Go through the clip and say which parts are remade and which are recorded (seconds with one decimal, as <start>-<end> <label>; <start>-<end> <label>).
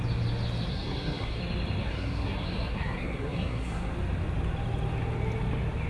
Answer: 0.0-0.7 recorded; 0.7-1.4 remade; 1.4-1.8 recorded; 1.8-3.9 remade; 3.9-5.9 recorded